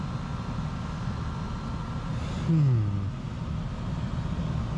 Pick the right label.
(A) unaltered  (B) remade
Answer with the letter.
A